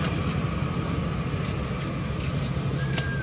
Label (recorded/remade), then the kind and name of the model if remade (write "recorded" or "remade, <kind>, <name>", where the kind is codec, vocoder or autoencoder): recorded